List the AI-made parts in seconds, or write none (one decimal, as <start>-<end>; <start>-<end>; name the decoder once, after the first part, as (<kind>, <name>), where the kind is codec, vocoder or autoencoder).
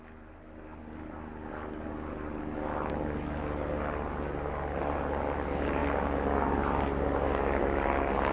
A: none